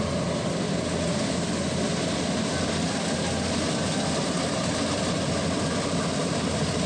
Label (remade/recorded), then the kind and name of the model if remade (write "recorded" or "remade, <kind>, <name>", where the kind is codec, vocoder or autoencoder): recorded